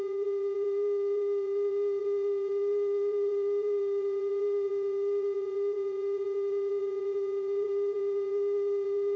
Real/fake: fake